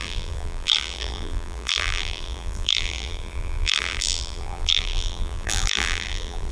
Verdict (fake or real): fake